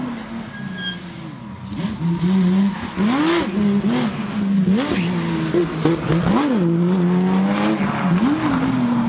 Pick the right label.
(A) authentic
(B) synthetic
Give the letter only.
A